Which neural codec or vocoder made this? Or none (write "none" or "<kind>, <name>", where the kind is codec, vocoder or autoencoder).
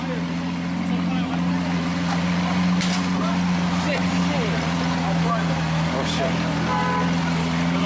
none